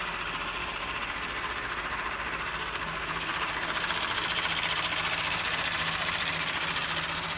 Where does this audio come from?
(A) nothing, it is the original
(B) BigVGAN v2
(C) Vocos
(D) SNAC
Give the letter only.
A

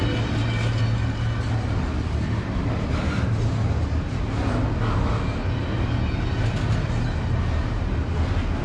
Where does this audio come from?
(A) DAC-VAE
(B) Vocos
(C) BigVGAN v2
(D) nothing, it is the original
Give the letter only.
D